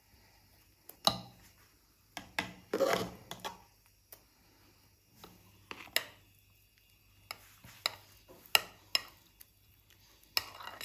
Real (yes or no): yes